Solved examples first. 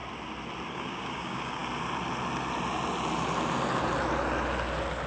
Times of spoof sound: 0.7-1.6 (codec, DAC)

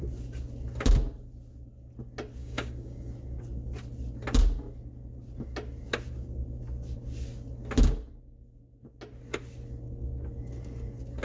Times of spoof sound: 2.4-3.1 (codec, DAC)

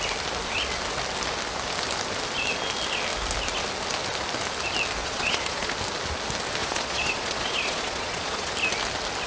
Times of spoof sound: 5.0-5.7 (vocoder, Vocos); 6.6-8.5

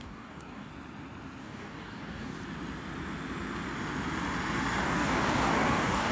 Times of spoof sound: 0.0-0.7 (codec, DAC); 1.4-2.3; 4.8-6.1

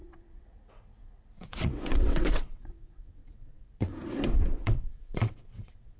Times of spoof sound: 0.0-3.9 (vocoder, WaveNeXt); 4.5-6.0